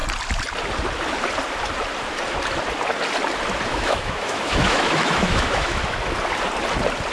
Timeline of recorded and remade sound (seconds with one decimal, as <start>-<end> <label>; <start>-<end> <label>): 0.0-3.7 recorded; 3.7-5.8 remade; 5.8-7.1 recorded